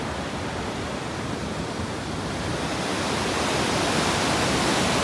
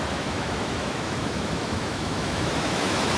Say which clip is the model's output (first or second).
second